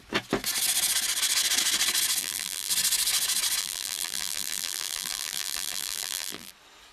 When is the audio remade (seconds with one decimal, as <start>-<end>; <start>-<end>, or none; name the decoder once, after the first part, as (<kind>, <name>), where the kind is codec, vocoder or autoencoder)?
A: 2.2-2.7 (vocoder, BigVGAN v2); 3.6-6.5